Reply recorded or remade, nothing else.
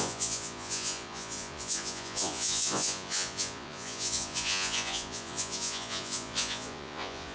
remade